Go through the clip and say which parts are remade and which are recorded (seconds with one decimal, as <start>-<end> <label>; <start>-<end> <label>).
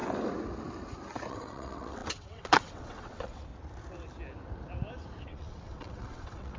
0.0-1.3 recorded; 1.3-3.5 remade; 3.5-5.2 recorded; 5.2-6.6 remade